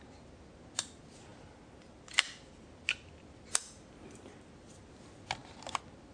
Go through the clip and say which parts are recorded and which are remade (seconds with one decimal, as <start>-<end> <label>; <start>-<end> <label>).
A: 0.0-6.1 recorded